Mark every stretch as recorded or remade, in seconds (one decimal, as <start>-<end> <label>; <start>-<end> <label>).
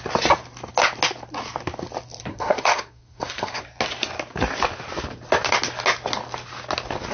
0.0-2.3 recorded; 2.3-3.6 remade; 3.6-7.1 recorded